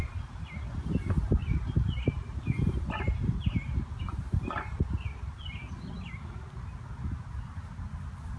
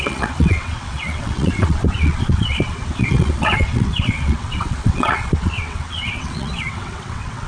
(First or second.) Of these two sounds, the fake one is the second